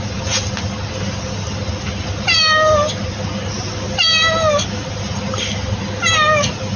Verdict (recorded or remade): recorded